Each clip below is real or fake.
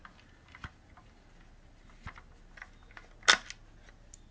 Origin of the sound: real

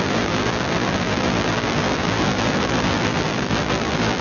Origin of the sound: fake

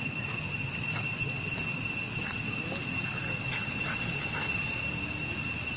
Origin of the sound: real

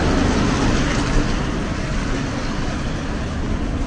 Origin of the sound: real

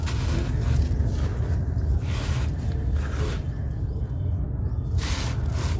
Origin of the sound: real